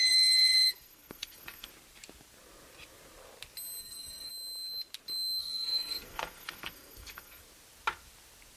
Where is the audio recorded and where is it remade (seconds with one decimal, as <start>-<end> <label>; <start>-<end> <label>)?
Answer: 0.0-1.7 remade; 1.7-3.8 recorded; 3.8-4.3 remade; 4.3-5.4 recorded; 5.4-7.4 remade; 7.4-8.6 recorded